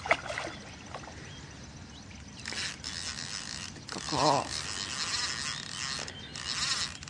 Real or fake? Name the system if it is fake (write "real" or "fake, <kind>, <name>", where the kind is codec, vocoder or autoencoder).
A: real